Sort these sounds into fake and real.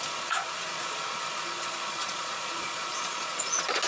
fake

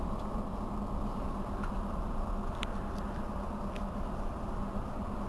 fake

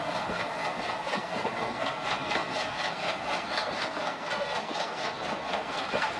fake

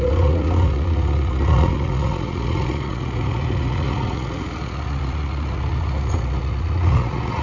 fake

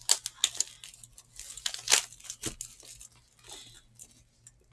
real